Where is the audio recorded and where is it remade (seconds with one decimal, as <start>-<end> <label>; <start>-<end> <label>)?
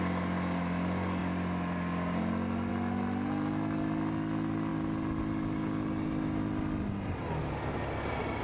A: 0.0-8.4 recorded